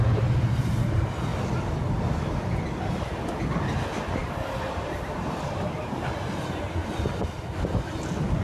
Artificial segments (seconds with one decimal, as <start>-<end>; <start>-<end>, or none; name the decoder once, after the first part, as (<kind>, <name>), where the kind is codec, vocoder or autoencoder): 4.2-5.2 (vocoder, BigVGAN v2)